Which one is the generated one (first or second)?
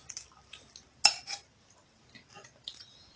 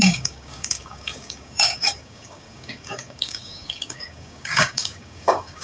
second